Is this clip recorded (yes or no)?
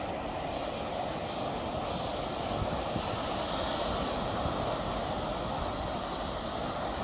yes